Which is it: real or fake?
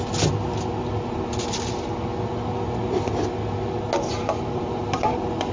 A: real